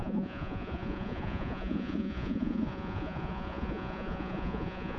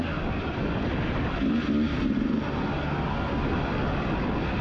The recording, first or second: second